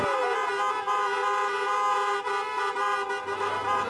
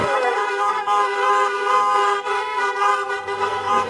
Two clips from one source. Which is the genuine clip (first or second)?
first